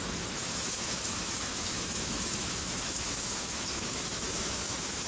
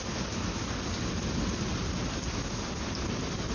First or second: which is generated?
first